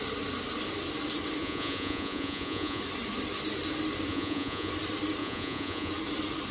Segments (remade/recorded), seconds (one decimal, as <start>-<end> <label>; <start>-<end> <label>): 0.0-1.4 recorded; 1.4-2.8 remade; 2.8-4.1 recorded; 4.1-4.7 remade; 4.7-5.2 recorded; 5.2-5.9 remade; 5.9-6.5 recorded